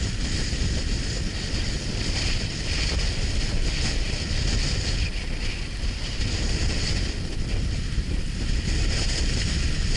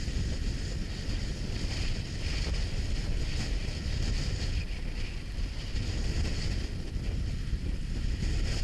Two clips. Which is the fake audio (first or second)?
first